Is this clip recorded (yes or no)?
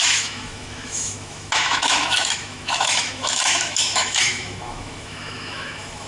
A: no